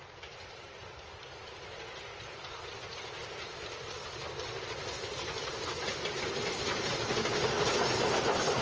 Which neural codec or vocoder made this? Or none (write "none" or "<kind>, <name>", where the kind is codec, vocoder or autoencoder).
vocoder, BigVGAN v2